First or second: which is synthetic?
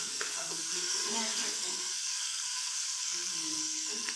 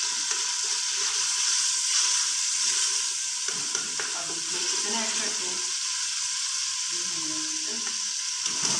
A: first